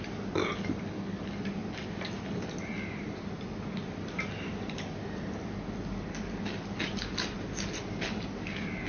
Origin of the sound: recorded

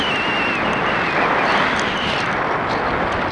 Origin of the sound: recorded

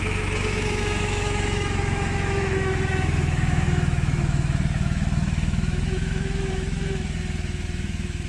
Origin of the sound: remade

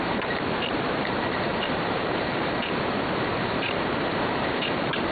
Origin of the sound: remade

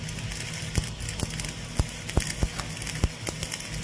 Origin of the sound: recorded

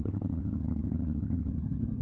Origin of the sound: remade